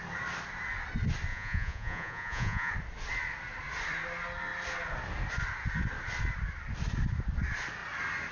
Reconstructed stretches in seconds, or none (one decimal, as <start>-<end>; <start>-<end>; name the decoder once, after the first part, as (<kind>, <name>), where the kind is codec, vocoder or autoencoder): 1.3-2.7 (vocoder, Vocos)